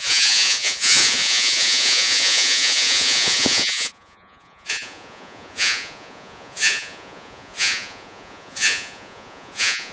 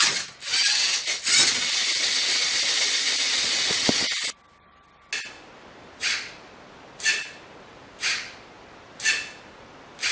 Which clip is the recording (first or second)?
second